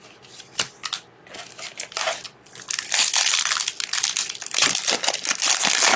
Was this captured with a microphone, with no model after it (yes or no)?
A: yes